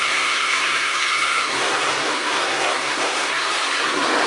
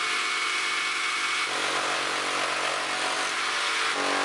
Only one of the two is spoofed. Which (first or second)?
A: first